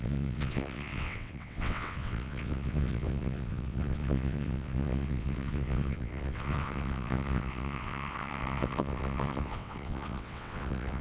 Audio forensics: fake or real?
fake